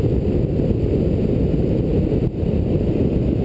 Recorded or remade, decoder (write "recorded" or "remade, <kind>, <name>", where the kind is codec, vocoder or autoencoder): recorded